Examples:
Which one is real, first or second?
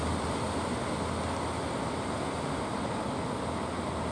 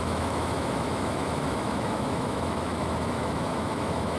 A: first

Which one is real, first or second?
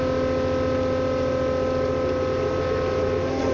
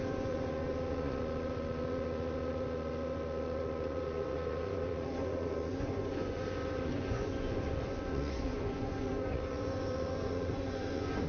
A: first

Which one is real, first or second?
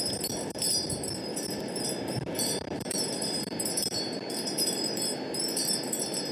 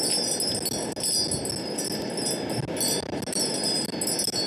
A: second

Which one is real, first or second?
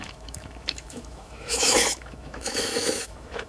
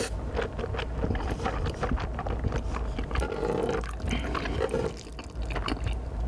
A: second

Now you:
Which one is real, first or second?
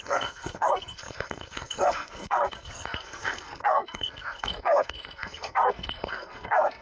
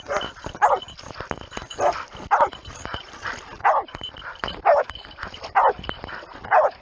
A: second